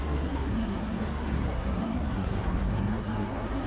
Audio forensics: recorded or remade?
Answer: remade